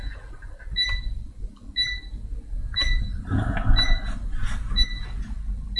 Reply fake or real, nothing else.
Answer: real